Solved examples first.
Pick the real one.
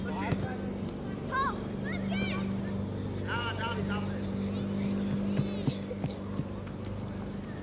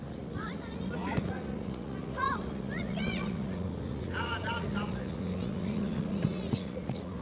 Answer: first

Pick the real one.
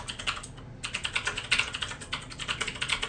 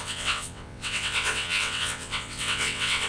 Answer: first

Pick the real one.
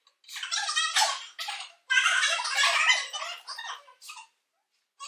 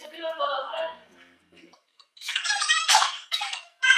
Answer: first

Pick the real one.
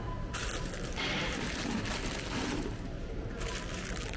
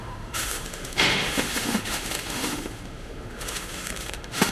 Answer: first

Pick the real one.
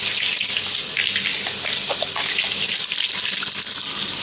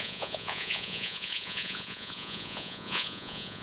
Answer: first